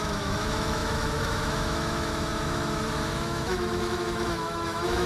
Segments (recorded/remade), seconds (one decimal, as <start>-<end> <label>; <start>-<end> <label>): 0.0-5.1 remade